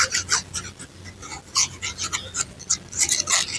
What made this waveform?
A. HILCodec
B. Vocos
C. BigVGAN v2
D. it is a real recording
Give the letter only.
D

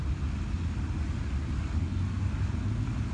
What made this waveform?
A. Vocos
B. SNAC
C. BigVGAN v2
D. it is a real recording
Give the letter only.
D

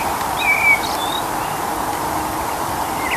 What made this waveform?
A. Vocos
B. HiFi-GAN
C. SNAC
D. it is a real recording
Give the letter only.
D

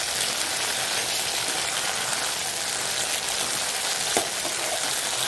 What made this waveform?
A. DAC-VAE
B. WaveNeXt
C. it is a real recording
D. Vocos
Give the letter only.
C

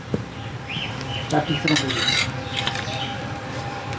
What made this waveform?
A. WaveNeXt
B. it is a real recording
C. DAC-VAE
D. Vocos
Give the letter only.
B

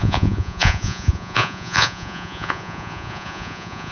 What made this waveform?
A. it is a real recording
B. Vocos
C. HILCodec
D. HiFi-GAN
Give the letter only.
B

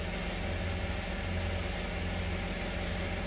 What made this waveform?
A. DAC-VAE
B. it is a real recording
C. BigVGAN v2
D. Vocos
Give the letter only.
B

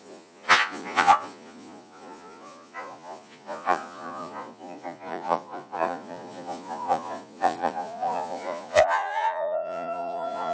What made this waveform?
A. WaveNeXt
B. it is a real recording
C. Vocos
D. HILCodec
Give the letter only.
C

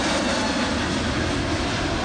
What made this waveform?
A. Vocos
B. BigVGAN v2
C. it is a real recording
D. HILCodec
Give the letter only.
C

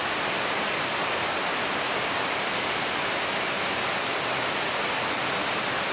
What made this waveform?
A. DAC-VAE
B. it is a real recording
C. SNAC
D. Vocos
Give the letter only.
B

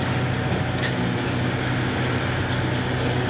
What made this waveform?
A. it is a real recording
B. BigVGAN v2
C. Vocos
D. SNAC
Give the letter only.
A